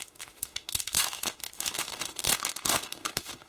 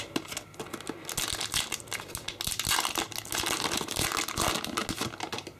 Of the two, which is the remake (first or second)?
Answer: first